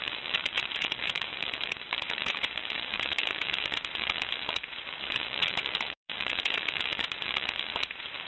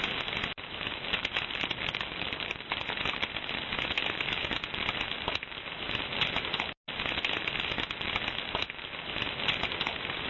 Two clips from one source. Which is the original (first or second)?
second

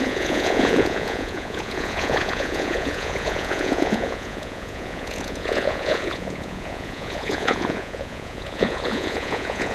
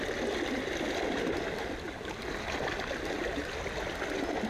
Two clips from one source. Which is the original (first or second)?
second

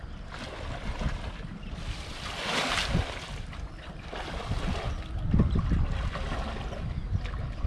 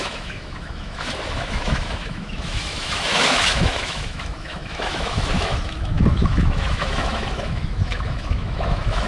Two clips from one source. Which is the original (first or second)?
first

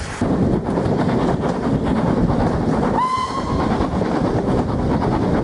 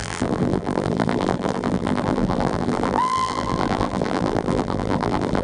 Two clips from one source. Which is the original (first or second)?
first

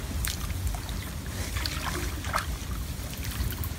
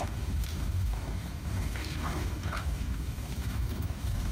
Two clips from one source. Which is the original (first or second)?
first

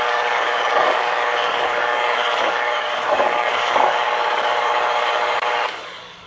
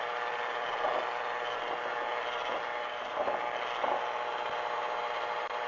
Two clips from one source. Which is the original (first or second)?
second